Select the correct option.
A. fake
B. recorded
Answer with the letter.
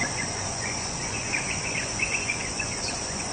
A